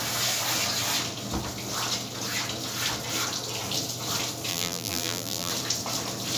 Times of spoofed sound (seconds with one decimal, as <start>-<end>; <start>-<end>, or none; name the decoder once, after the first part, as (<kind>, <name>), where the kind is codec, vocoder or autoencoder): 4.5-5.5 (vocoder, BigVGAN v2)